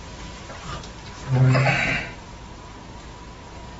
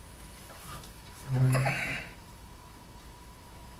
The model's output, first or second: second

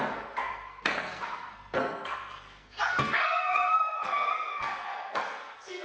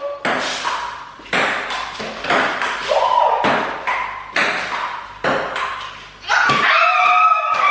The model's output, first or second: first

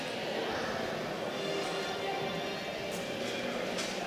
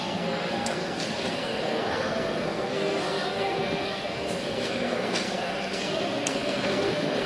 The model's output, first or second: second